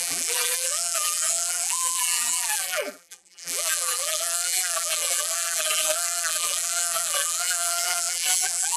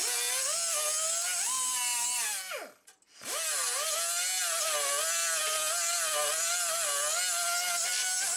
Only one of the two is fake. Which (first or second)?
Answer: first